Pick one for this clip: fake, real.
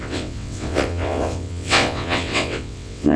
fake